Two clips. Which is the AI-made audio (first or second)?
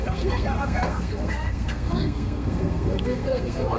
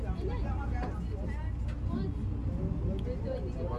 first